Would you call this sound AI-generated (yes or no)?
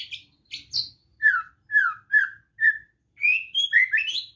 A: no